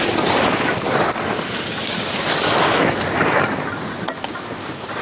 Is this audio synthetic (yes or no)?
no